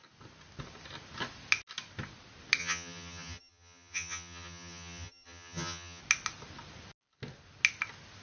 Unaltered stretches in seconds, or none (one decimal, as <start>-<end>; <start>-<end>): 0.0-2.6; 6.0-8.2